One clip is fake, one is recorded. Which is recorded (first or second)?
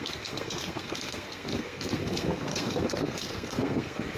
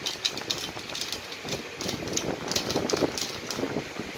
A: second